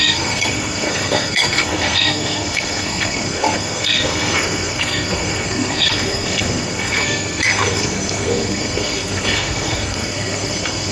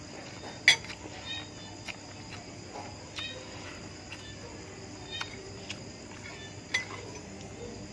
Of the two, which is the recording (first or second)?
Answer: second